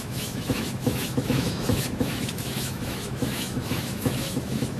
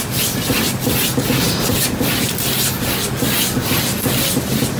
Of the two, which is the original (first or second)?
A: second